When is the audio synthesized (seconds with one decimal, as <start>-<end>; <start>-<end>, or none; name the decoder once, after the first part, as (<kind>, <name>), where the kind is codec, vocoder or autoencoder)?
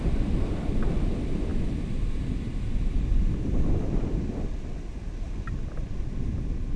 none